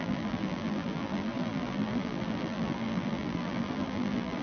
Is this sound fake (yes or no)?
yes